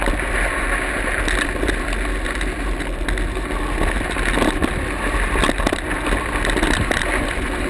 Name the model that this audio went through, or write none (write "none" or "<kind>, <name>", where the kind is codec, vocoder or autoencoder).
none